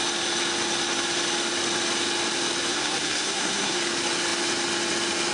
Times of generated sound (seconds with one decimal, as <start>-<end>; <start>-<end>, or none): 2.7-3.8